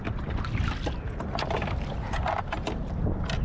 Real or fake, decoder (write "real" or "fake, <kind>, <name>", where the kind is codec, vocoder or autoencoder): real